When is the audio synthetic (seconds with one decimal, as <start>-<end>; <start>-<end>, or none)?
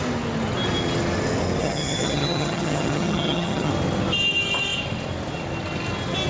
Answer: 1.6-3.7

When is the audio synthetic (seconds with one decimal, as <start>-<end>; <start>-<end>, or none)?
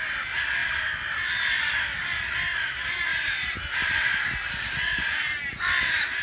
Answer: none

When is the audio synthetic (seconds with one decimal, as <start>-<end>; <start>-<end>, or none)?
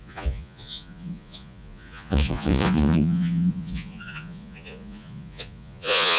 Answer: 0.0-6.2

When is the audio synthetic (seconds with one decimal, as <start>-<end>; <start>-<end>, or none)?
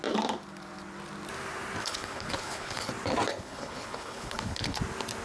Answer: 1.8-2.9; 3.3-4.8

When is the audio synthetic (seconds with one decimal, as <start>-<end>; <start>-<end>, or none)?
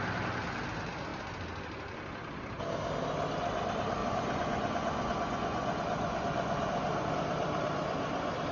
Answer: 4.0-7.1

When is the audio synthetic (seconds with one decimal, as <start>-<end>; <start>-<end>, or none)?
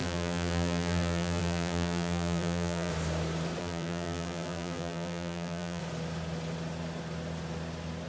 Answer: 0.0-2.9; 3.6-5.8